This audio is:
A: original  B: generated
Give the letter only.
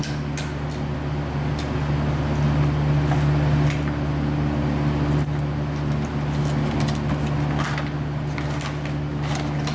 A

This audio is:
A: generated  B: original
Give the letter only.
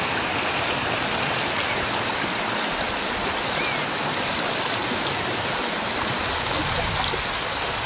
B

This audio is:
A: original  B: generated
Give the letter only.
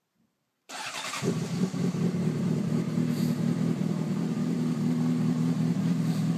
B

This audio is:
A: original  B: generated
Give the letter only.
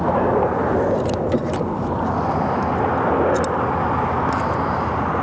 A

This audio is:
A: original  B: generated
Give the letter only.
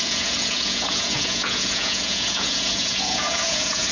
B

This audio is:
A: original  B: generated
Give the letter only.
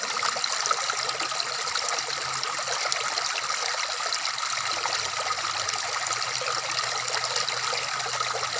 A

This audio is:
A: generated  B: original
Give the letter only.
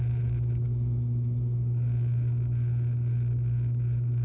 A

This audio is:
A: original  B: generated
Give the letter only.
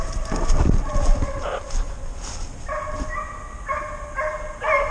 A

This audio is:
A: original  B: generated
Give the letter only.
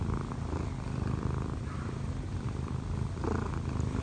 A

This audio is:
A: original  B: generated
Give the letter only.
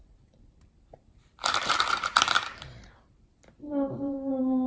B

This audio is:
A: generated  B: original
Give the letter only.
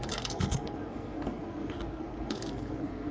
A